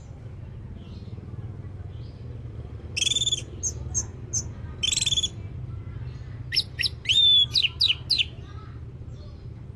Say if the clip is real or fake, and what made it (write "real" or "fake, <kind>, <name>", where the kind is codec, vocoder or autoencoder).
real